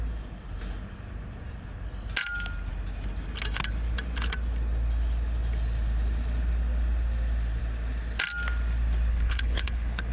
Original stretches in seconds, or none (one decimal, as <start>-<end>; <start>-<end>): 0.0-9.1